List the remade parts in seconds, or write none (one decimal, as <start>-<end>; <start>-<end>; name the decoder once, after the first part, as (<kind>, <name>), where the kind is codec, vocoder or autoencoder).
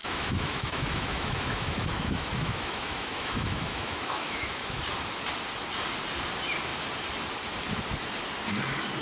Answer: 0.0-4.8 (autoencoder, DAC-VAE)